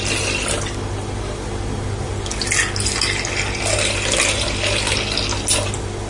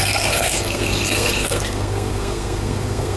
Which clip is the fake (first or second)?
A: second